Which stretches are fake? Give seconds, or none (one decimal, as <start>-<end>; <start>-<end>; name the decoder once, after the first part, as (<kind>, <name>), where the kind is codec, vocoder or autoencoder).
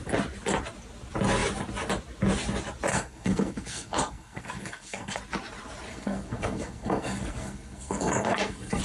2.9-5.2 (codec, SNAC); 5.9-8.8